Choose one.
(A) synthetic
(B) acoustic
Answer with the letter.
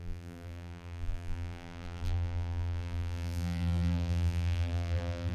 A